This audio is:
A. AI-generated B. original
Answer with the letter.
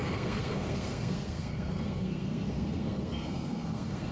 A